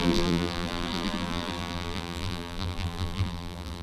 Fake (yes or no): yes